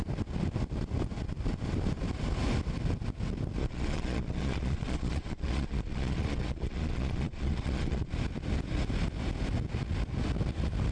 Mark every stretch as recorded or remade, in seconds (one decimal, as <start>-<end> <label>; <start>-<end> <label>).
0.0-3.6 recorded; 3.6-8.1 remade; 8.1-10.9 recorded